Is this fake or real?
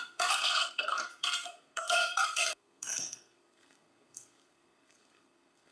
fake